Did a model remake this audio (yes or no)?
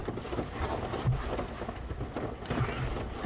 no